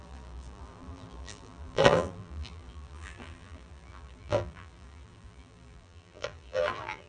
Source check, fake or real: fake